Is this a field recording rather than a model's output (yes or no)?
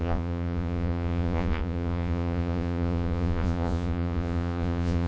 no